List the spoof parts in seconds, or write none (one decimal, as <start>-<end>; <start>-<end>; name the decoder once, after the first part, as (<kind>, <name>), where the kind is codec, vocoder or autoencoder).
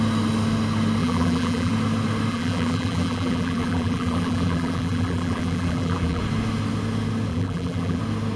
1.0-1.7 (vocoder, BigVGAN v2); 2.3-6.2; 7.3-8.0